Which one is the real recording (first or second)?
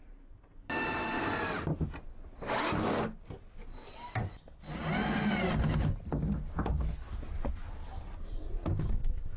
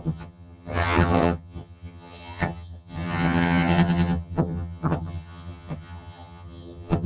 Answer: first